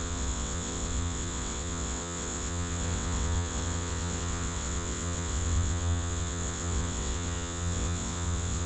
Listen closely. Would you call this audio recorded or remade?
remade